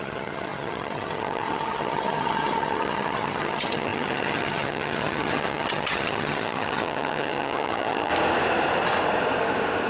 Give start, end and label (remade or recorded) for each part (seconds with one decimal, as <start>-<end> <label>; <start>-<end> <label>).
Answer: 0.0-8.1 remade; 8.1-9.9 recorded